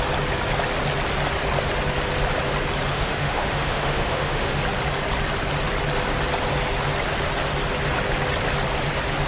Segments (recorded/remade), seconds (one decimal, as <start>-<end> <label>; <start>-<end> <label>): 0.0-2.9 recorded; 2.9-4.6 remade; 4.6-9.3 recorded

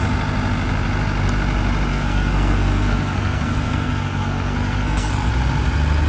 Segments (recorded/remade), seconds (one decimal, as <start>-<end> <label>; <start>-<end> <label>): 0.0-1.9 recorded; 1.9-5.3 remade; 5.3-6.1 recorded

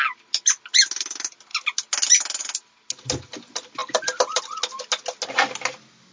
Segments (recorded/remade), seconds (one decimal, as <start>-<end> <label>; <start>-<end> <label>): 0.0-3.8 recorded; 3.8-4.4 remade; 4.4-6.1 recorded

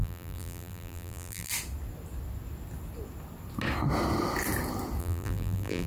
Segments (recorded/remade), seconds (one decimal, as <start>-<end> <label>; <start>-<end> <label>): 0.0-1.5 remade; 1.5-5.0 recorded; 5.0-5.9 remade

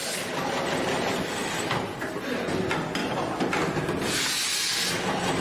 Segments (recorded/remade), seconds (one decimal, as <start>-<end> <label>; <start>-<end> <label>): 0.0-5.4 recorded